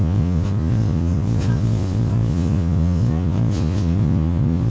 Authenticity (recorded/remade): remade